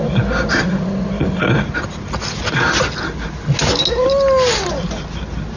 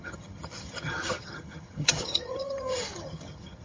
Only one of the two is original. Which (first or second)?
first